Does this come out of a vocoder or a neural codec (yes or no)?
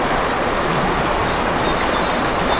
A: no